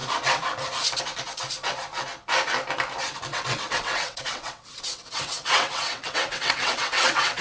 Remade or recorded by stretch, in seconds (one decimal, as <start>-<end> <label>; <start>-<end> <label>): 0.0-3.3 recorded; 3.3-7.4 remade